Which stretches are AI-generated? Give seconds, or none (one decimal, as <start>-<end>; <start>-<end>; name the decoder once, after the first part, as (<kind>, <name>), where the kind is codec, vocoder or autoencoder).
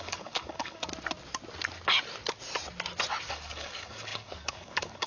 0.0-0.9 (codec, DAC); 3.3-5.1